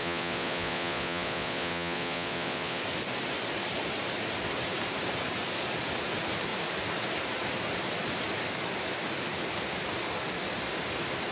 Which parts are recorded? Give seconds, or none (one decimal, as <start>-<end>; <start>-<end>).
2.8-11.3